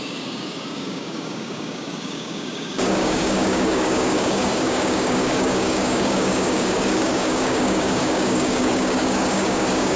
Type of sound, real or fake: fake